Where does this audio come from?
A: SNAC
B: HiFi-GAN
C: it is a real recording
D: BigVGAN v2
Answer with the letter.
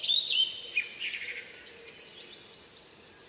C